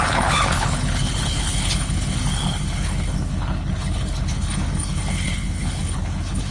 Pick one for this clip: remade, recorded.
remade